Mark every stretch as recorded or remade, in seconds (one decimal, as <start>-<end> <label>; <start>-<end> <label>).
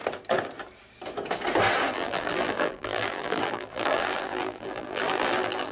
0.0-1.9 recorded; 1.9-5.7 remade